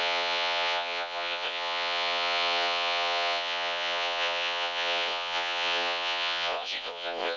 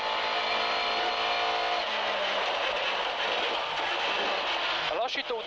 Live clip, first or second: second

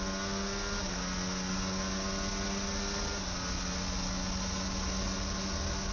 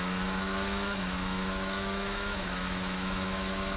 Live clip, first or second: first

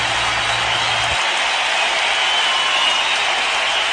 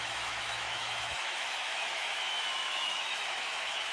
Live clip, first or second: first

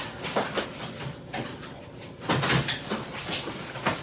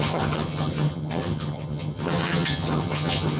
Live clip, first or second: first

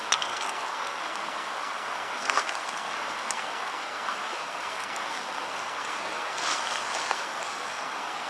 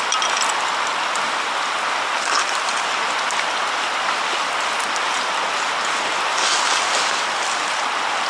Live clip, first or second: second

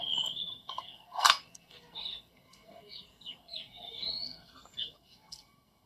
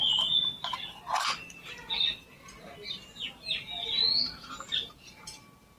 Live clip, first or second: second